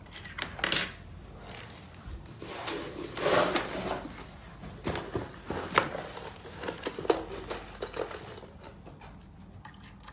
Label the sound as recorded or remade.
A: recorded